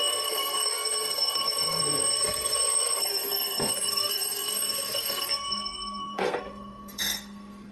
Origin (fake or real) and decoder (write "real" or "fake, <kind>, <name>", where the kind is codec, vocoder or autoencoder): fake, codec, SNAC